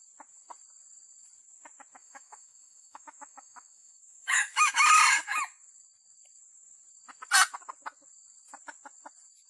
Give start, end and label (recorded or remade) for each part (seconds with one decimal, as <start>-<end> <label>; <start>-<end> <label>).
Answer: 0.0-2.0 recorded; 2.0-4.7 remade; 4.7-9.5 recorded